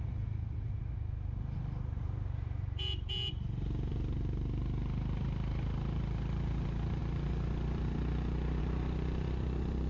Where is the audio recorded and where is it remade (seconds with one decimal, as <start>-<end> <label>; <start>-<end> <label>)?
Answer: 0.0-9.9 recorded